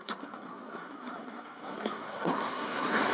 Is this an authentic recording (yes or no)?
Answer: no